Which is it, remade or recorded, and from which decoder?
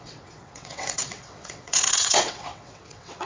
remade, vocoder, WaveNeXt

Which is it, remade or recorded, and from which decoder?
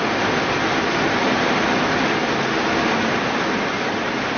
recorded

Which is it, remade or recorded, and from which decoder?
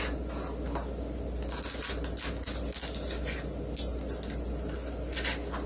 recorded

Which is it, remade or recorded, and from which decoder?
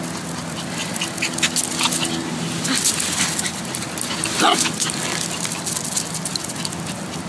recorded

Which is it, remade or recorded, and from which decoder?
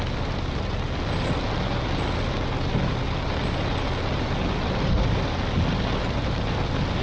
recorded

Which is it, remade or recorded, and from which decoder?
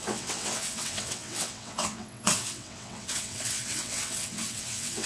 remade, vocoder, WaveNeXt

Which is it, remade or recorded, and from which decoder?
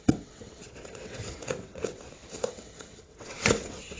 remade, vocoder, WaveNeXt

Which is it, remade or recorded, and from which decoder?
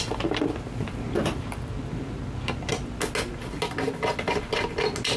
recorded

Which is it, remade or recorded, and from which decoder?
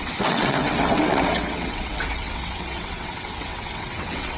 remade, vocoder, WaveNeXt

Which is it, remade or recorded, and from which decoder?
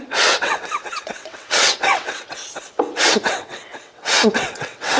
remade, vocoder, WaveNeXt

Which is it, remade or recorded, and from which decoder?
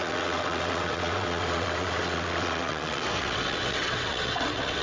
remade, vocoder, WaveNeXt